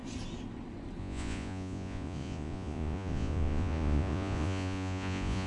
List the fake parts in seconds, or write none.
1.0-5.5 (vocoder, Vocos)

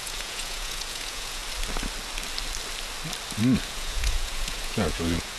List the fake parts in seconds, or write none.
0.0-1.4 (vocoder, Vocos); 3.7-5.4

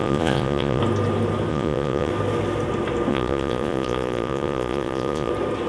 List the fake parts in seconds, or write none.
0.0-0.8 (vocoder, Vocos); 1.5-2.1; 3.1-5.3